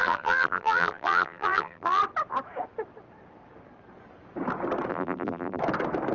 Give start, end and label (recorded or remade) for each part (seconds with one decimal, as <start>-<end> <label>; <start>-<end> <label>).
0.0-2.0 remade; 2.0-4.9 recorded; 4.9-5.6 remade; 5.6-6.1 recorded